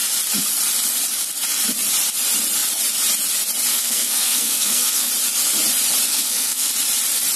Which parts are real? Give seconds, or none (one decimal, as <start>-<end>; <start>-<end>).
0.0-3.7; 5.1-6.1; 6.7-7.4